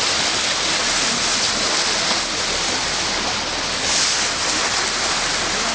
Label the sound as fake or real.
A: real